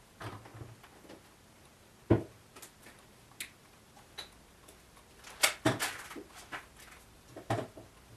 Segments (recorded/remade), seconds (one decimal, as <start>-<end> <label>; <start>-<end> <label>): 0.0-8.2 recorded